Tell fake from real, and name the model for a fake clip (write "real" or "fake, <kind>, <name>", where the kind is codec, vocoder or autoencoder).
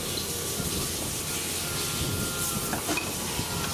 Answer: real